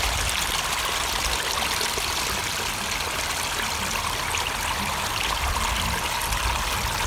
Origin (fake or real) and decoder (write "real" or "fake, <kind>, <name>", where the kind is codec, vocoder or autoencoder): real